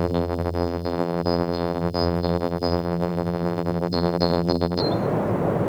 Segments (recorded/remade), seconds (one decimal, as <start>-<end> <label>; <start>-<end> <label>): 0.0-4.8 remade; 4.8-5.7 recorded